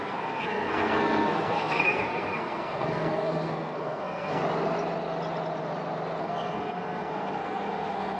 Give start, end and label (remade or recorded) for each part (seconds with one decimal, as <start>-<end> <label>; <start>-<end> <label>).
0.0-4.4 remade; 4.4-6.2 recorded; 6.2-8.2 remade